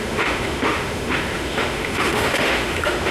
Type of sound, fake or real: fake